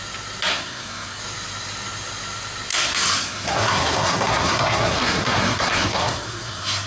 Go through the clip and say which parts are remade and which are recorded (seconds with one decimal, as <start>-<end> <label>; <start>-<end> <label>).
0.0-0.5 recorded; 0.5-1.2 remade; 1.2-2.7 recorded; 2.7-6.9 remade